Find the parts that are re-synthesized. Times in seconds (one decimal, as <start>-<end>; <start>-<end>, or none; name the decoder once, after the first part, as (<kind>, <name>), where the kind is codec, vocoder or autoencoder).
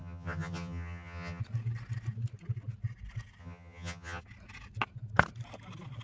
0.0-1.4 (vocoder, HiFi-GAN); 3.4-4.2